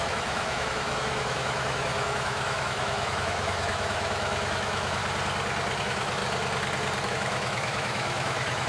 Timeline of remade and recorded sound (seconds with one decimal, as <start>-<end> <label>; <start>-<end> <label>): 0.0-5.0 remade; 5.0-5.8 recorded; 5.8-6.2 remade; 6.2-7.1 recorded; 7.1-8.7 remade